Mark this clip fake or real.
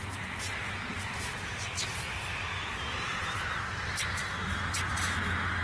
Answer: real